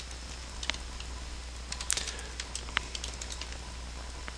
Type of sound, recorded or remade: recorded